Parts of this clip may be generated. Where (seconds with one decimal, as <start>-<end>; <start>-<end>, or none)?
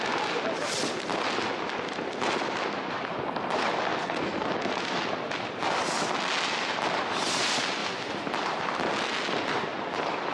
3.9-4.5